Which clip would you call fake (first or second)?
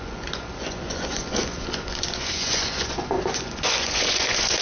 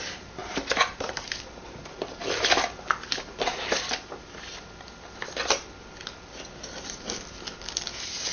first